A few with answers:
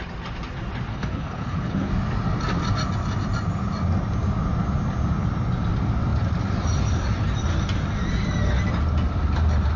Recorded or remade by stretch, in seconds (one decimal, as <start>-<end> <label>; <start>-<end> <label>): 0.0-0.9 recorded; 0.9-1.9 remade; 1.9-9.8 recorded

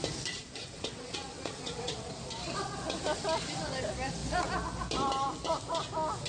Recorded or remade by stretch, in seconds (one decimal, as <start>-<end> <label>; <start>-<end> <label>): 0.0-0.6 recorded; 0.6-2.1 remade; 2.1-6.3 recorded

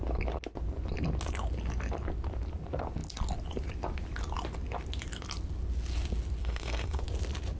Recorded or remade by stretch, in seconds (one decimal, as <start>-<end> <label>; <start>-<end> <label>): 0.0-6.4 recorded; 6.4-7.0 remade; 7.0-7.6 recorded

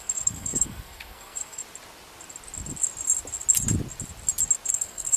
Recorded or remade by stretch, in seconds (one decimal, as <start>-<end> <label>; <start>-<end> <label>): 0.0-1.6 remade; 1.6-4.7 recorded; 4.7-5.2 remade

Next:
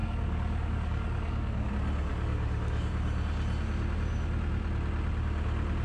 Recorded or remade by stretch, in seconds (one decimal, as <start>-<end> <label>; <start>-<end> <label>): 0.0-1.7 remade; 1.7-2.1 recorded; 2.1-2.9 remade; 2.9-5.8 recorded

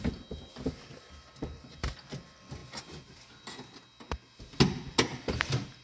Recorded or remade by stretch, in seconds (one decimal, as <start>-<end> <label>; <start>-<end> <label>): 0.0-5.8 recorded

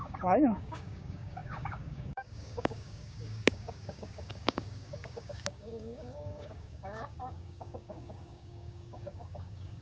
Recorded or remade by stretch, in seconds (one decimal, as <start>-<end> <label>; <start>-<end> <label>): 0.0-9.8 remade

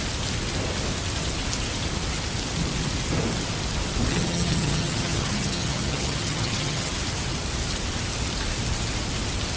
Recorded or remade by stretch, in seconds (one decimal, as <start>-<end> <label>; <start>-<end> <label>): 0.0-4.1 recorded; 4.1-6.9 remade; 6.9-9.6 recorded